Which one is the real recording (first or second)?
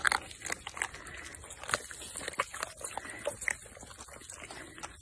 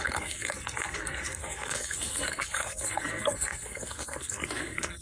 first